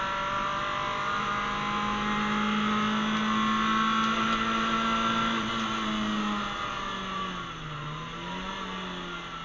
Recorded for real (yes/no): yes